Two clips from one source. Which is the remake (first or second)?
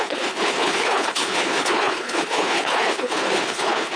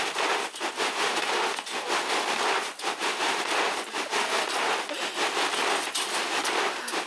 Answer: first